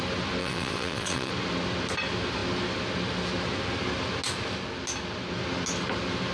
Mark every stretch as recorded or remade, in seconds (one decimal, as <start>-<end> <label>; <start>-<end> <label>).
0.0-0.4 recorded; 0.4-1.3 remade; 1.3-6.3 recorded